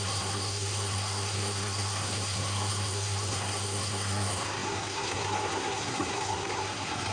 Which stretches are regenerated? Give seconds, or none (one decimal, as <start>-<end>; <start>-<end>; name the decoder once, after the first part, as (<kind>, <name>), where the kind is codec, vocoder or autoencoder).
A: 0.0-7.1 (codec, SNAC)